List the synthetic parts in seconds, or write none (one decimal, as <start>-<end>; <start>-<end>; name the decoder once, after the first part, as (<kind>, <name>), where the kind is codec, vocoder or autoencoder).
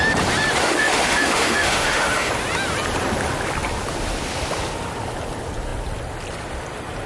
0.6-2.3 (autoencoder, DAC-VAE)